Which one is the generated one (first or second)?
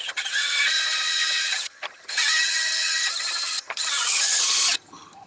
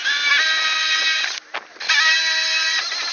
first